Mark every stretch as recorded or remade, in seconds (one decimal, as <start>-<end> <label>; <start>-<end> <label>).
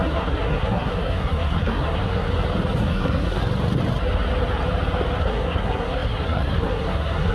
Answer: 0.0-2.3 remade; 2.3-2.8 recorded; 2.8-3.4 remade; 3.4-5.2 recorded; 5.2-7.3 remade